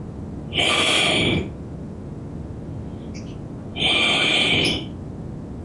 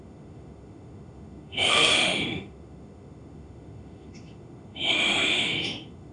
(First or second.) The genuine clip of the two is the first